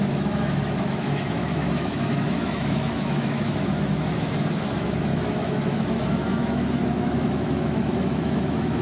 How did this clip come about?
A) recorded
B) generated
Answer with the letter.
B